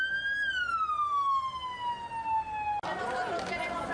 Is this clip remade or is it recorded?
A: recorded